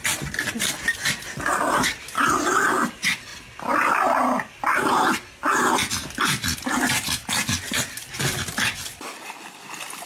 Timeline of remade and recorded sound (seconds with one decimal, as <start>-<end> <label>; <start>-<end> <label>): 0.0-10.1 recorded